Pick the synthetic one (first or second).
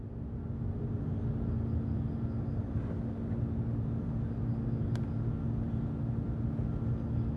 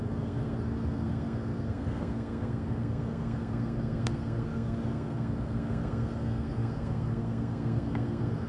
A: second